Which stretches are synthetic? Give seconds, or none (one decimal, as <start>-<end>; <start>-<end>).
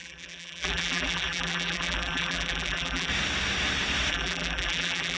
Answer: 0.0-3.1; 4.1-5.2